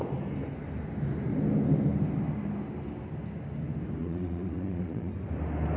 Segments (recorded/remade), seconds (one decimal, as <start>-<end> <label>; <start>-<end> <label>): 0.0-4.0 recorded; 4.0-5.1 remade; 5.1-5.8 recorded